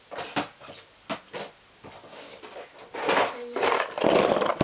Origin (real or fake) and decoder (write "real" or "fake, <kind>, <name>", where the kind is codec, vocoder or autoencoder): real